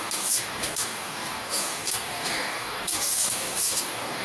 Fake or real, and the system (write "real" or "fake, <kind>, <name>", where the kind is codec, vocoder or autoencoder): fake, codec, DAC